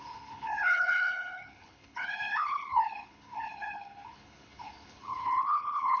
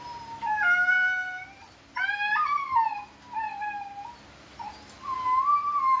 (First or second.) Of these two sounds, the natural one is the second